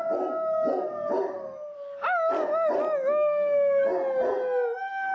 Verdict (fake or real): real